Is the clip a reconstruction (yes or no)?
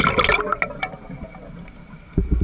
no